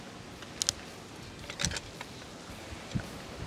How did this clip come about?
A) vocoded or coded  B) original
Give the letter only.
B